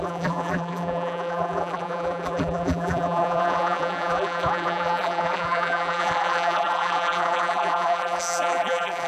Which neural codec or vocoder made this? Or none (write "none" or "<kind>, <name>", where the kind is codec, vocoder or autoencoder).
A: vocoder, BigVGAN v2